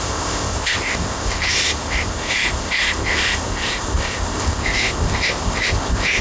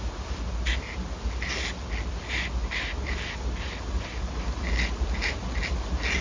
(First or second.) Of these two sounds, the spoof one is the first